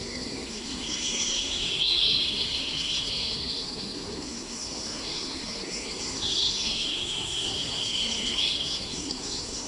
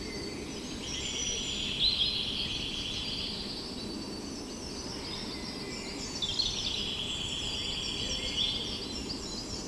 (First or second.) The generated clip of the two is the first